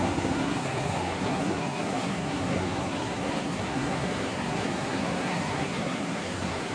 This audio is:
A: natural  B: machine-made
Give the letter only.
B